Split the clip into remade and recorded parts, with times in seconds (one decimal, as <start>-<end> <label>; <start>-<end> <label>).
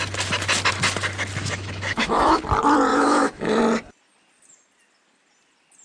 0.0-1.4 recorded; 1.4-2.4 remade; 2.4-2.9 recorded; 2.9-3.6 remade; 3.6-5.8 recorded